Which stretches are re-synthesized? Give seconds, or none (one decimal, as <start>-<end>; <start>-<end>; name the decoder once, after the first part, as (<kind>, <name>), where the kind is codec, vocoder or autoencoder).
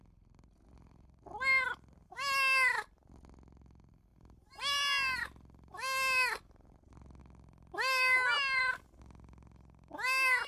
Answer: none